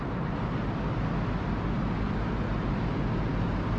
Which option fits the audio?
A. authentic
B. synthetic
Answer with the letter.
A